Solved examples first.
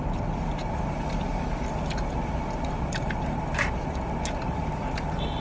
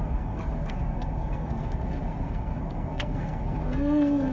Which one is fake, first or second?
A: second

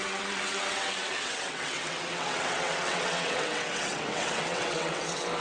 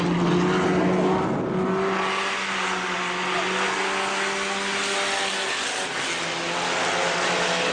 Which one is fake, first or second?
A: first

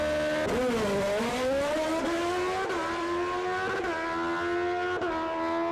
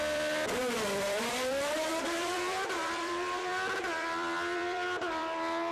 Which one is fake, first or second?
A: second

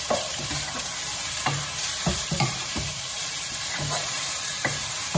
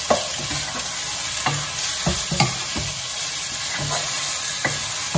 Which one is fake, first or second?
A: first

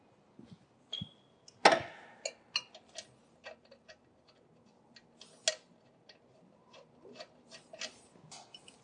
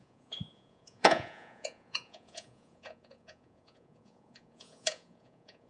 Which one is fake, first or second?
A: second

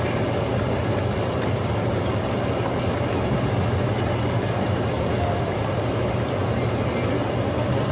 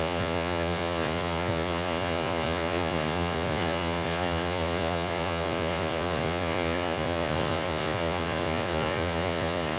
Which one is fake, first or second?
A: second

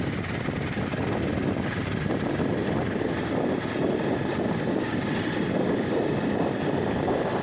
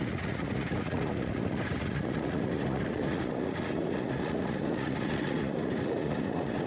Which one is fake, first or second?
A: second